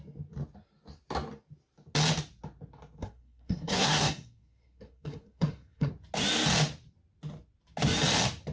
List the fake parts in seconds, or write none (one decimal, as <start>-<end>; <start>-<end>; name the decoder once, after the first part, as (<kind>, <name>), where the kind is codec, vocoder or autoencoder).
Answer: 3.0-5.9 (codec, SNAC)